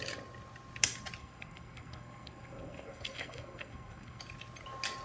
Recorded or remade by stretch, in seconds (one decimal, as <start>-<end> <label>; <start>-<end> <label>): 0.0-1.2 recorded; 1.2-4.2 remade; 4.2-5.0 recorded